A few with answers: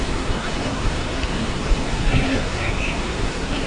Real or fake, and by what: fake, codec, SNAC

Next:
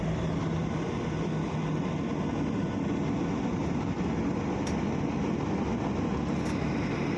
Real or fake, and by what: real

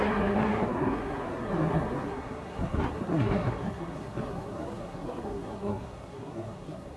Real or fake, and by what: fake, codec, SNAC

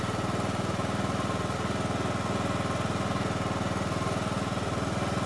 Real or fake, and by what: real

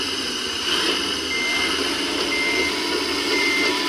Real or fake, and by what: real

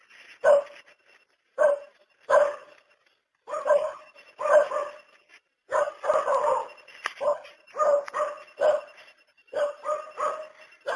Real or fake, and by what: real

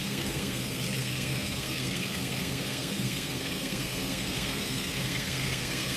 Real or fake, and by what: fake, codec, SNAC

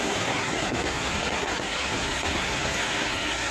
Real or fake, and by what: fake, codec, SNAC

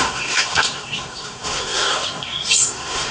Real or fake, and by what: fake, codec, SNAC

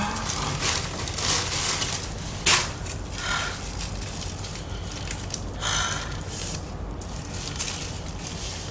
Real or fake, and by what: real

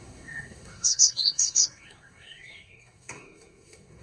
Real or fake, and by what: fake, codec, SNAC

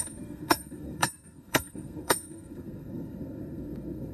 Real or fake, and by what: fake, codec, SNAC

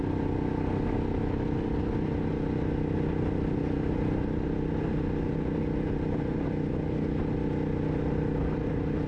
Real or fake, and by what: real